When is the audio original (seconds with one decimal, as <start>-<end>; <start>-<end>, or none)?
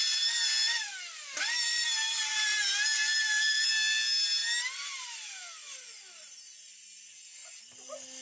0.0-8.2